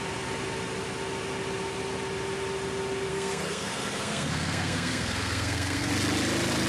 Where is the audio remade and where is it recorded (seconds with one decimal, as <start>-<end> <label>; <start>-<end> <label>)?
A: 0.0-3.1 recorded; 3.1-5.9 remade; 5.9-6.7 recorded

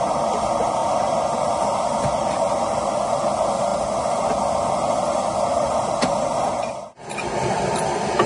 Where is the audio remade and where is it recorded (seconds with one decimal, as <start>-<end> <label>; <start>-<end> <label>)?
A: 0.0-8.3 recorded